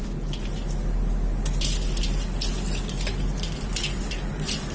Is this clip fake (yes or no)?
no